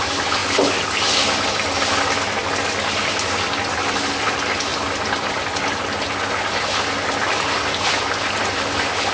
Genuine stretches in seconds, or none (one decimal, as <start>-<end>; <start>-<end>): 0.0-9.1